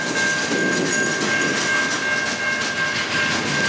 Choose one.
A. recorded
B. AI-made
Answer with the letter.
A